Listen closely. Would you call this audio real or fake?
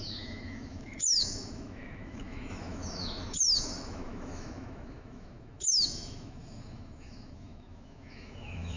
fake